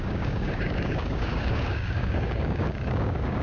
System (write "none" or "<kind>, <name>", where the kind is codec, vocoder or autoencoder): codec, DAC